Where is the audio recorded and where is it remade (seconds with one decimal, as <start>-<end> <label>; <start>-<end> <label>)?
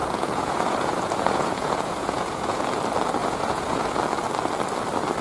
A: 0.0-2.6 remade; 2.6-3.2 recorded; 3.2-4.0 remade; 4.0-5.2 recorded